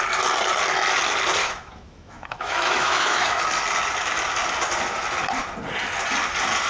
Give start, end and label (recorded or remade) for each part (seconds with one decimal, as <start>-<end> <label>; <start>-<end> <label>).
0.0-1.4 recorded; 1.4-3.4 remade; 3.4-6.7 recorded